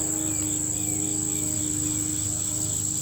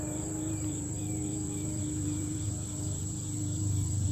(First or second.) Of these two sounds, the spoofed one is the second